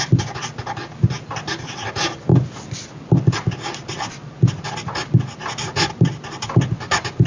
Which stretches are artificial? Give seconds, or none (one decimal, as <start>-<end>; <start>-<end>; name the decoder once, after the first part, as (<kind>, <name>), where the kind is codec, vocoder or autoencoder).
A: none

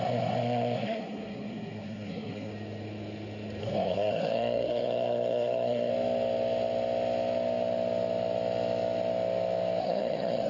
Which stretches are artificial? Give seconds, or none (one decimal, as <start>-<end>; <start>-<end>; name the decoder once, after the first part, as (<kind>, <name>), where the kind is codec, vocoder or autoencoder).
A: 0.0-2.5 (codec, SNAC); 3.6-5.9; 9.8-10.5

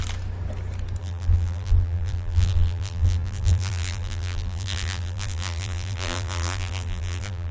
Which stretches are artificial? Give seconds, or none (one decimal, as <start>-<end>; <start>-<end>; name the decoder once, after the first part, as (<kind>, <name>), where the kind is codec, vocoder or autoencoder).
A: 1.0-7.5 (vocoder, BigVGAN v2)